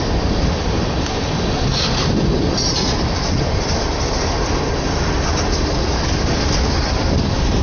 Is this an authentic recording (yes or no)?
yes